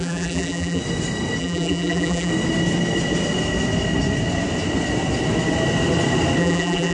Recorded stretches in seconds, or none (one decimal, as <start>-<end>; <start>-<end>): 0.8-1.4; 2.3-6.4